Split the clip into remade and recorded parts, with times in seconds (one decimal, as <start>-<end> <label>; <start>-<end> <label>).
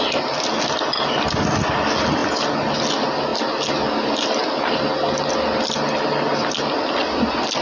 0.0-7.6 recorded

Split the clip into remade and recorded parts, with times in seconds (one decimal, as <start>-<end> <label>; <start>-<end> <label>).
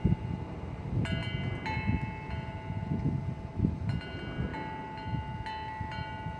0.0-6.4 recorded